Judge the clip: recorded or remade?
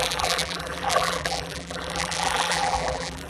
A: remade